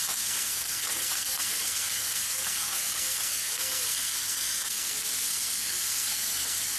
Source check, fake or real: fake